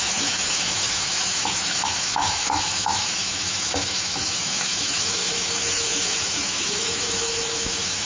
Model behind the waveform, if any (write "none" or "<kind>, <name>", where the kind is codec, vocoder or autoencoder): autoencoder, DAC-VAE